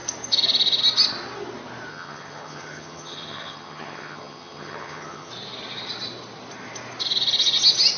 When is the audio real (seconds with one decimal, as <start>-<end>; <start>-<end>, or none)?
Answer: 0.0-1.9; 5.3-8.0